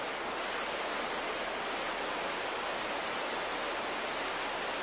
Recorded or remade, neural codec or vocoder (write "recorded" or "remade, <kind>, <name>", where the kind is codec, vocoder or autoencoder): recorded